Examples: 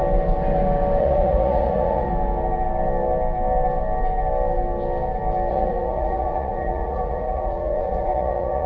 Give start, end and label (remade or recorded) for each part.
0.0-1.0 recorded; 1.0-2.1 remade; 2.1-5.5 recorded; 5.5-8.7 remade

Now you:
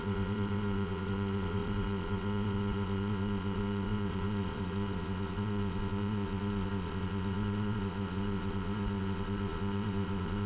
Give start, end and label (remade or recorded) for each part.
0.0-10.5 remade

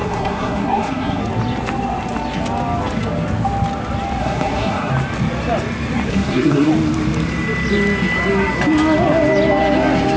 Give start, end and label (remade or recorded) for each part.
0.0-1.2 remade; 1.2-4.2 recorded; 4.2-4.9 remade; 4.9-6.1 recorded; 6.1-6.7 remade; 6.7-10.2 recorded

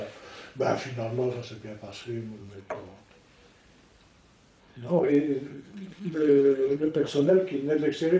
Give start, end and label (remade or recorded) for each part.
0.0-2.4 recorded; 2.4-3.0 remade; 3.0-4.6 recorded; 4.6-5.1 remade; 5.1-5.5 recorded; 5.5-7.3 remade; 7.3-8.2 recorded

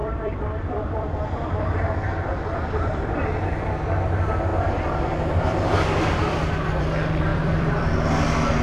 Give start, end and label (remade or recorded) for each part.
0.0-4.0 remade; 4.0-4.5 recorded; 4.5-6.8 remade; 6.8-7.3 recorded; 7.3-7.9 remade; 7.9-8.6 recorded

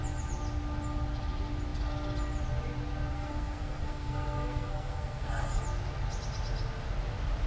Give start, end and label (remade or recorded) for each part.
0.0-3.1 recorded; 3.1-5.6 remade; 5.6-7.5 recorded

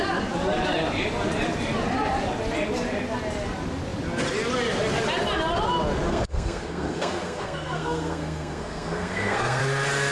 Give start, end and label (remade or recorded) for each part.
0.0-6.1 recorded; 6.1-9.6 remade; 9.6-10.1 recorded

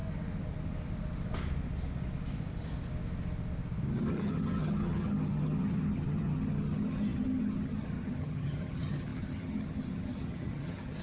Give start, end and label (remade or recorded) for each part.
0.0-4.1 recorded; 4.1-11.0 remade